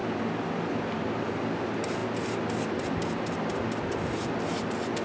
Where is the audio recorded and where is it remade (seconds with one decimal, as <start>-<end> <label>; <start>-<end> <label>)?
0.0-5.0 recorded

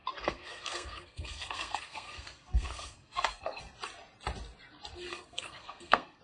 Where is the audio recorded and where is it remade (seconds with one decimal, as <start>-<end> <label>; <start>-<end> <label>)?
0.0-3.6 remade; 3.6-5.1 recorded; 5.1-6.2 remade

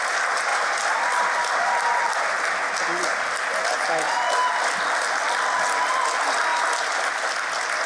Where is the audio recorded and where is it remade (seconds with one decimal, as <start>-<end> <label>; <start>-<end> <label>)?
0.0-7.9 recorded

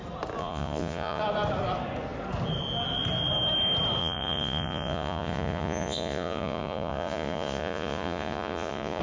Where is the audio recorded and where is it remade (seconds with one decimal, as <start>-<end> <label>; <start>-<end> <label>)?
0.0-0.4 recorded; 0.4-1.2 remade; 1.2-4.0 recorded; 4.0-9.0 remade

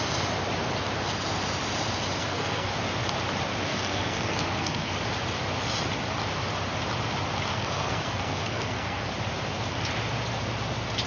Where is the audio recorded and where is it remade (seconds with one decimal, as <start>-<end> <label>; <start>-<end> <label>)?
0.0-2.2 recorded; 2.2-2.7 remade; 2.7-3.7 recorded; 3.7-4.9 remade; 4.9-7.5 recorded; 7.5-9.1 remade; 9.1-11.1 recorded

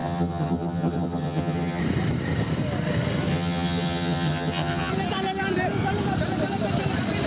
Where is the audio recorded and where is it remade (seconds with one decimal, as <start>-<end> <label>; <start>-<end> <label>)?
0.0-1.8 remade; 1.8-3.3 recorded; 3.3-4.9 remade; 4.9-7.3 recorded